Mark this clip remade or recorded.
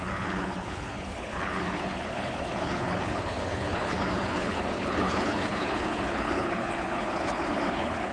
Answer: remade